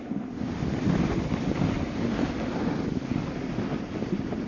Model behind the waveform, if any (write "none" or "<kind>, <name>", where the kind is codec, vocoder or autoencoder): none